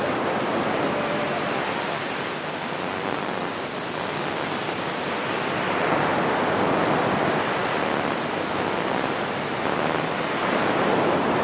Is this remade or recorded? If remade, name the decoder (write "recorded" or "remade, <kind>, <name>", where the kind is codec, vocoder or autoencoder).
recorded